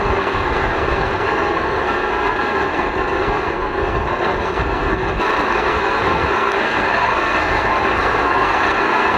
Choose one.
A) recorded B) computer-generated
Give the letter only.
B